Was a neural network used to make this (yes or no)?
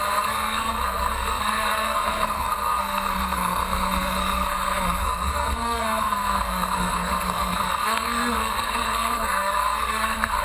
yes